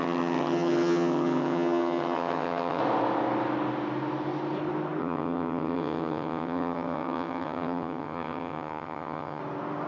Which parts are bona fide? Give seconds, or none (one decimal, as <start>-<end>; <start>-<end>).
2.8-5.0; 9.4-9.9